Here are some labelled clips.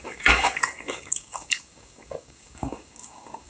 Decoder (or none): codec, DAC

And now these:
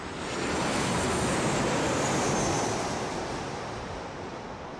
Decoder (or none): none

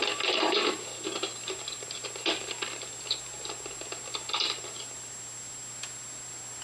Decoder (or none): none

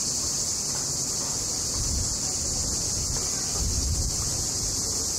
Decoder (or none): none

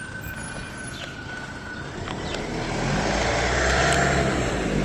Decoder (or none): none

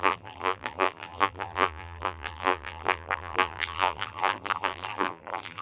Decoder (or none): vocoder, BigVGAN v2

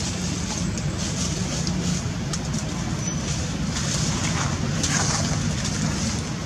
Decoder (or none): none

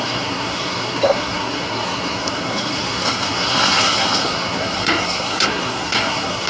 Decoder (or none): codec, SNAC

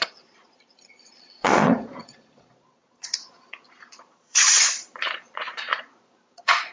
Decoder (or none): vocoder, Vocos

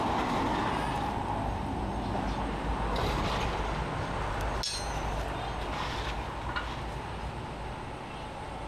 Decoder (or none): none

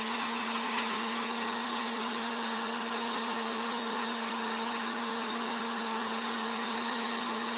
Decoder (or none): vocoder, HiFi-GAN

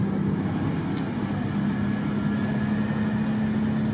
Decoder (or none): none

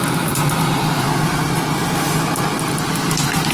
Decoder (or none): none